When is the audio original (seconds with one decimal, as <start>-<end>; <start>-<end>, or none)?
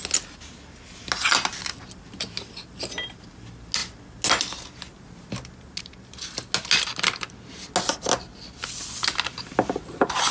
0.0-10.3